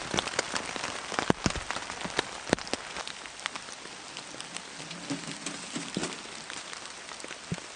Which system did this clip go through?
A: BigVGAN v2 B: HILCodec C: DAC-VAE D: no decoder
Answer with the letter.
D